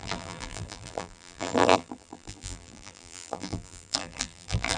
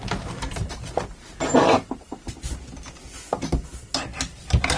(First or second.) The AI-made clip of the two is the first